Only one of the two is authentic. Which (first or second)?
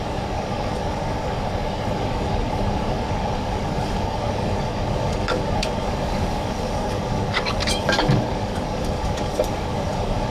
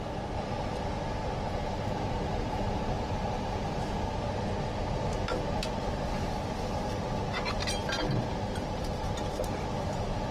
second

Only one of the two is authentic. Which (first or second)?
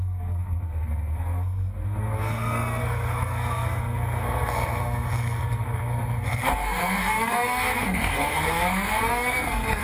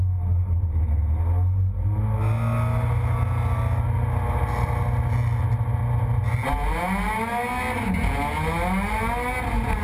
second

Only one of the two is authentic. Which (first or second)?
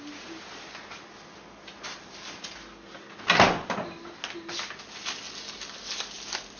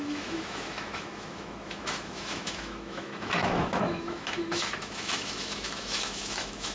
first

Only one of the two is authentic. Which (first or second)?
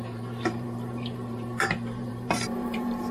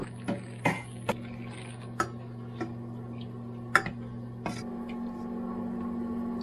second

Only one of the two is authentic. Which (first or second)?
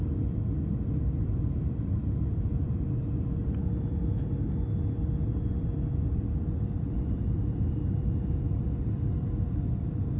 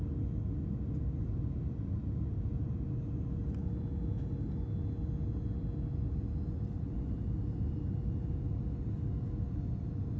second